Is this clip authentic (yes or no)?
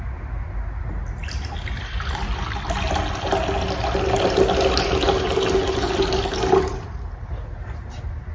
yes